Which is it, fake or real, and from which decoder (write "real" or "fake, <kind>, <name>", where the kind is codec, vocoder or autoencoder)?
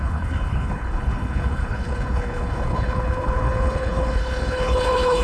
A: fake, codec, HILCodec